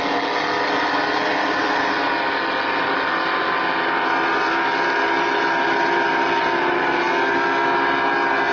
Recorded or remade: recorded